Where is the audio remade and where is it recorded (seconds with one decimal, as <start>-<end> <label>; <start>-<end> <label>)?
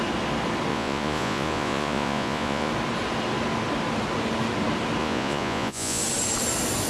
0.0-0.7 recorded; 0.7-2.7 remade; 2.7-5.0 recorded; 5.0-6.0 remade; 6.0-6.9 recorded